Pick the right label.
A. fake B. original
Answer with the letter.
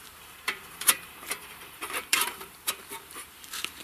A